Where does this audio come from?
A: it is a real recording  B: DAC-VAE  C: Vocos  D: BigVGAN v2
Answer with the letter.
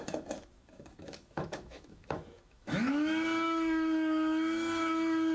B